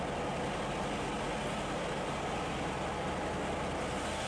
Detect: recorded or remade recorded